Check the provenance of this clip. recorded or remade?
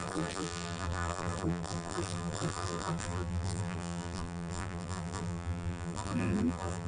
remade